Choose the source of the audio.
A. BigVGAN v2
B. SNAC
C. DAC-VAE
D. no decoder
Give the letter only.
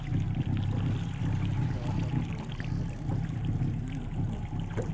D